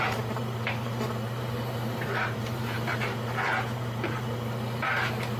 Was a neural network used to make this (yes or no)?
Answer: yes